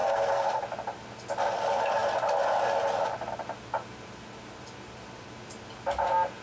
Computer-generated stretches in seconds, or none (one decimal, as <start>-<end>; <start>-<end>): 0.0-0.6